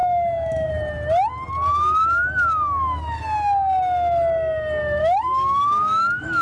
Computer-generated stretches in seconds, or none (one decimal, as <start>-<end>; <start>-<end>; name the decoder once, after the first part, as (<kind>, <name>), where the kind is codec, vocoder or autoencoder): 0.0-0.7 (autoencoder, DAC-VAE); 1.7-3.0; 5.0-6.4